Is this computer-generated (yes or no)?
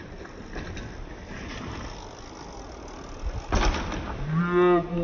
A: no